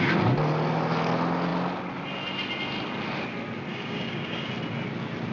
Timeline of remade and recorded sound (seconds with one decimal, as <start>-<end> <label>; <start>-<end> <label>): 0.0-3.7 recorded; 3.7-4.5 remade; 4.5-5.3 recorded